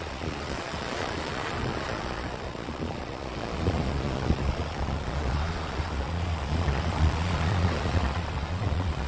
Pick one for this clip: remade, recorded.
remade